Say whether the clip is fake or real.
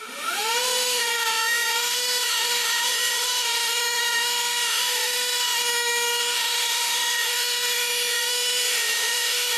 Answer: fake